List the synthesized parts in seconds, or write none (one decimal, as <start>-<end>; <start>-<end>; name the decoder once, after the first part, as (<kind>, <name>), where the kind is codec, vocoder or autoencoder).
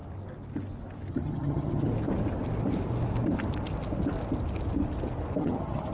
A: 1.1-1.9 (vocoder, HiFi-GAN); 5.4-5.9